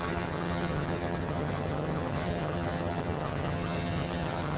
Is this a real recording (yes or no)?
no